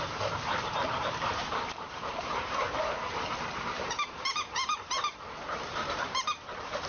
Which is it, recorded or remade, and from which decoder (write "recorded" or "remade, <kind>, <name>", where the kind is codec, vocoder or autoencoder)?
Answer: remade, vocoder, BigVGAN v2